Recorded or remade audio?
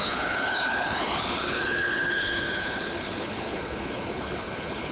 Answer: remade